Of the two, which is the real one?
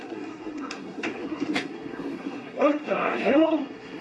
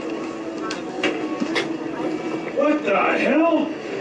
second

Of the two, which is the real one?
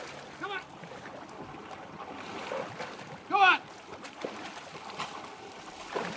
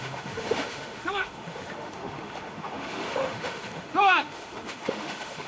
first